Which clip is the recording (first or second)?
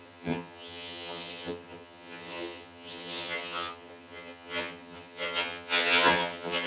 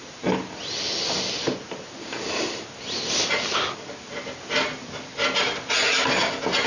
second